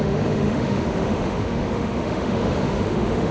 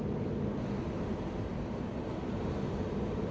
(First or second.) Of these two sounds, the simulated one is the first